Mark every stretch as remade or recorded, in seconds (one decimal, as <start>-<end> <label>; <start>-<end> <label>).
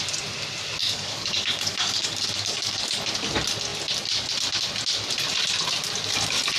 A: 0.0-0.8 recorded; 0.8-3.0 remade; 3.0-6.6 recorded